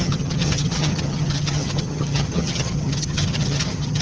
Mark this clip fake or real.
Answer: fake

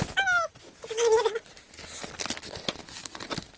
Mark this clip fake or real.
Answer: real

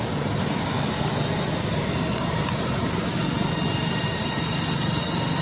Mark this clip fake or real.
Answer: real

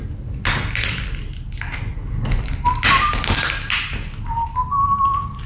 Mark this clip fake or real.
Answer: real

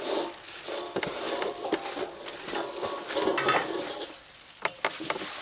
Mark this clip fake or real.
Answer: real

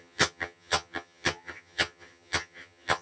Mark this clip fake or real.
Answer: fake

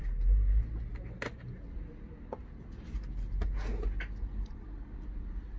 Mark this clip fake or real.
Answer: real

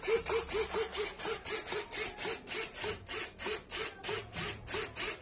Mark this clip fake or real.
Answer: real